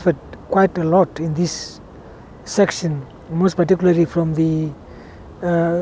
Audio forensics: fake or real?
real